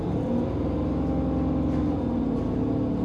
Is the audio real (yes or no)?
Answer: yes